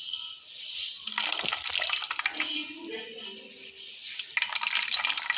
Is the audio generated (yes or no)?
no